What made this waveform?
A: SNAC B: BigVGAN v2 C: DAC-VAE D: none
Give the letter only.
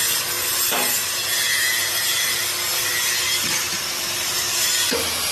D